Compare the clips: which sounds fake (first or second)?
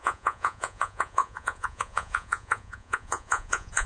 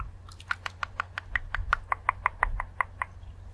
first